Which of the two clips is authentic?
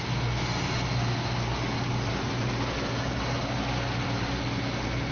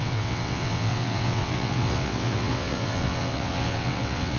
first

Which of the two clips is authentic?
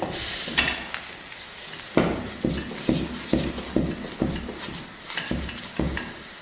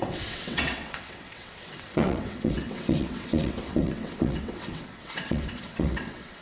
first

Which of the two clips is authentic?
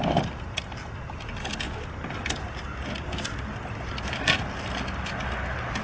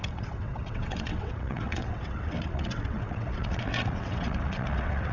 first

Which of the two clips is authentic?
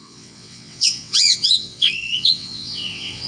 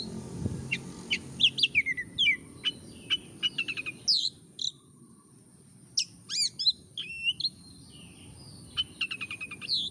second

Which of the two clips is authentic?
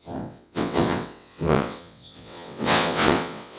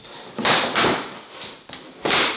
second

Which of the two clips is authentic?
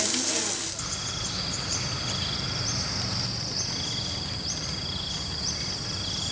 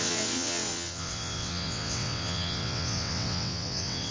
first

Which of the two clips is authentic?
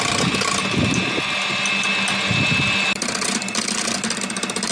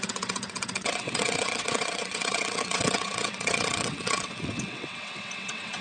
first